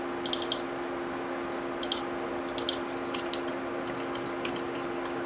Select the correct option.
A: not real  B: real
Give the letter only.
B